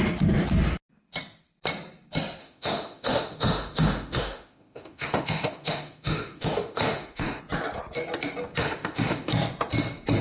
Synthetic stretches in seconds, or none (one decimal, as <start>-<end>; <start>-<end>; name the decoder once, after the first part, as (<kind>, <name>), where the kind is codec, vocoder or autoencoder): 2.4-7.4 (autoencoder, DAC-VAE); 8.6-9.3